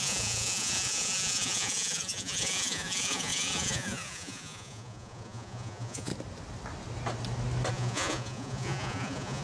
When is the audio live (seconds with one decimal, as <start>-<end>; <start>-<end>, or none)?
6.1-7.7